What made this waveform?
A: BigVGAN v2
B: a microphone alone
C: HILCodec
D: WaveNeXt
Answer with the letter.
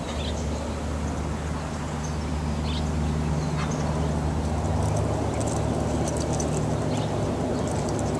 B